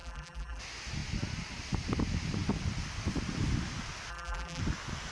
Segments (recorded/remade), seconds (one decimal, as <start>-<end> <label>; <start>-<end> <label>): 0.0-0.6 remade; 0.6-4.1 recorded; 4.1-4.6 remade; 4.6-5.1 recorded